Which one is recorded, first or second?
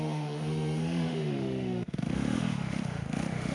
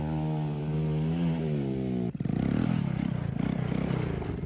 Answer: second